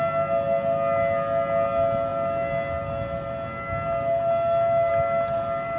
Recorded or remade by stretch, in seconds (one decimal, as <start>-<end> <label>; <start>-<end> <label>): 0.0-5.8 recorded